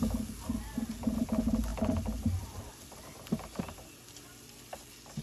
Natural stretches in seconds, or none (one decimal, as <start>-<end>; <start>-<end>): 0.0-1.7; 3.6-5.2